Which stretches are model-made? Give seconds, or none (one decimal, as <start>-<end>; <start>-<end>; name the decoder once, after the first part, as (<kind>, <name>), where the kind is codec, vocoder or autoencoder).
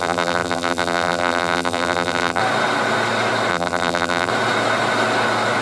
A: 0.0-2.4 (vocoder, BigVGAN v2); 3.5-4.3